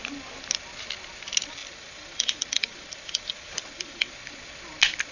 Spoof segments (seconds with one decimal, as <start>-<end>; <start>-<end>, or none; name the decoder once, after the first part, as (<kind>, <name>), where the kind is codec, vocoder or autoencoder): 1.6-4.1 (vocoder, BigVGAN v2)